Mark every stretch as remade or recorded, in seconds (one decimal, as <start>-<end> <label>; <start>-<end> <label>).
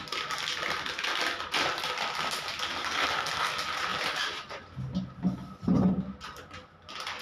0.0-2.8 recorded; 2.8-3.5 remade; 3.5-7.2 recorded